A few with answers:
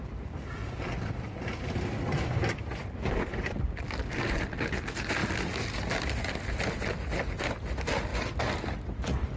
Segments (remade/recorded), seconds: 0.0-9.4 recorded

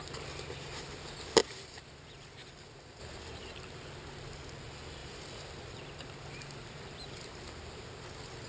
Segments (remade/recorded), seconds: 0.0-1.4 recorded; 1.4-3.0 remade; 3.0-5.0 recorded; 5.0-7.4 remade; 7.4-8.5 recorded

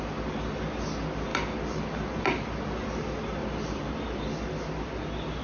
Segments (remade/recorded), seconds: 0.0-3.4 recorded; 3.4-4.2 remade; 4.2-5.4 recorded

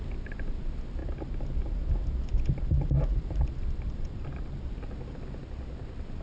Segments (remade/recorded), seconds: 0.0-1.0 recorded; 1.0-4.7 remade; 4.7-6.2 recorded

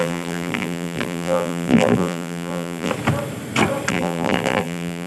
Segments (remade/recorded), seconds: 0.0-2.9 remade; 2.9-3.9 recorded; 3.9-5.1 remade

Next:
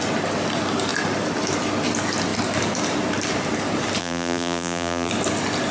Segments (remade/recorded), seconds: 0.0-4.0 recorded; 4.0-5.1 remade; 5.1-5.7 recorded

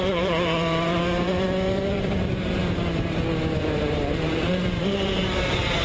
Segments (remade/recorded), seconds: 0.0-2.6 remade; 2.6-3.6 recorded; 3.6-5.8 remade